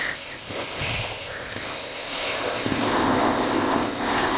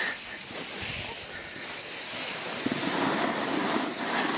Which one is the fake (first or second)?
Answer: first